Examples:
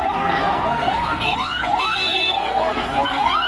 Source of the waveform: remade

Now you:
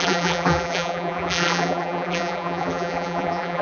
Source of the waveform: remade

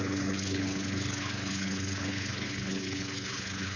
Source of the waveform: remade